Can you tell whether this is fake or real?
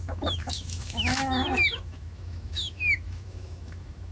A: fake